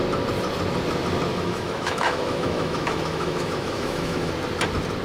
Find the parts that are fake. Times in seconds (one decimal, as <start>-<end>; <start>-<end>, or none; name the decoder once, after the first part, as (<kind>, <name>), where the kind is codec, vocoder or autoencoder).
1.3-4.3 (autoencoder, DAC-VAE)